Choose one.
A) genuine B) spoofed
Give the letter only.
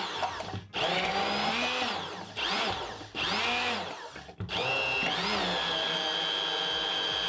A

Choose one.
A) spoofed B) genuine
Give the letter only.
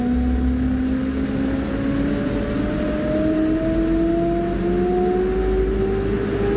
B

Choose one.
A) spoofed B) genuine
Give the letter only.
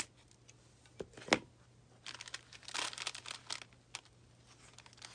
B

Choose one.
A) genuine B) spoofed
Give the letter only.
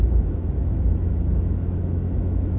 B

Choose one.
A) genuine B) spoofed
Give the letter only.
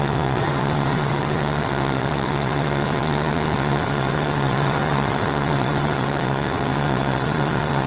B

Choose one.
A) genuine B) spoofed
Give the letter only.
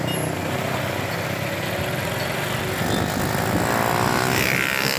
A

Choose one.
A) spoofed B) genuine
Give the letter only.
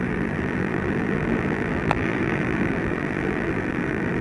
A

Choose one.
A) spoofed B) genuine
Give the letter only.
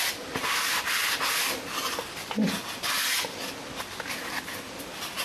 B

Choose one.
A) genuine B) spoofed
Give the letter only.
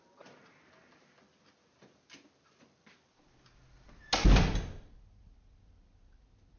A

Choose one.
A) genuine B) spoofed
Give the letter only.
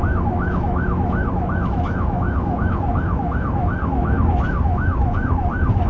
B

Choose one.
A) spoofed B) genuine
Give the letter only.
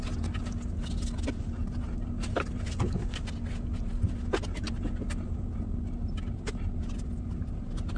B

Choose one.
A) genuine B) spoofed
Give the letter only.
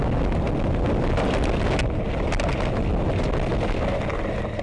A